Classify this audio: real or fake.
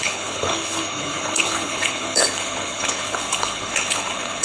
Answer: fake